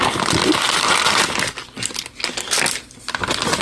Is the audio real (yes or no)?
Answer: yes